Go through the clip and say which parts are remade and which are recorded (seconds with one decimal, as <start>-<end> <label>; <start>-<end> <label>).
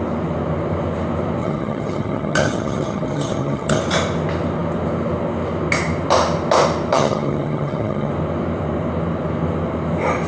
0.0-1.4 recorded; 1.4-3.8 remade; 3.8-6.9 recorded; 6.9-8.1 remade; 8.1-10.3 recorded